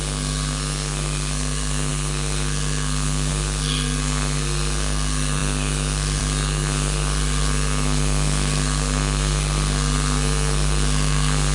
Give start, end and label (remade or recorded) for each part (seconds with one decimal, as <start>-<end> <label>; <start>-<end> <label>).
0.0-11.5 remade